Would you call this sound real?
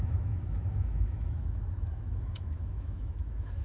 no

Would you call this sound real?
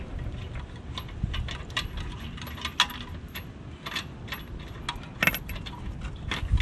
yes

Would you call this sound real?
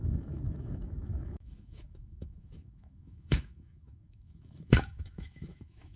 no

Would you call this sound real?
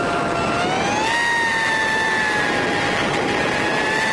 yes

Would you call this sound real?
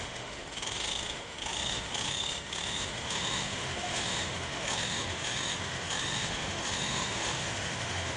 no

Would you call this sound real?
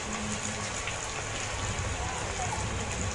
yes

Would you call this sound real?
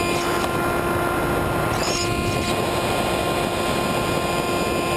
yes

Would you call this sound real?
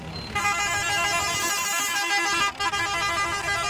yes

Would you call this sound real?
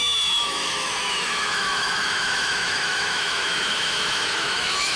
no